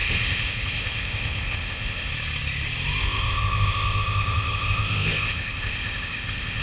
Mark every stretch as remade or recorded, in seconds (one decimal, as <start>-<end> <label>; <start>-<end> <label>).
0.0-2.1 remade; 2.1-3.0 recorded; 3.0-6.6 remade